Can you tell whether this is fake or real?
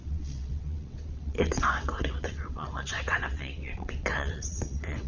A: fake